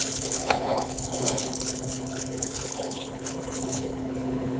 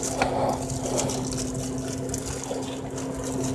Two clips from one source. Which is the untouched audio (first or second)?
second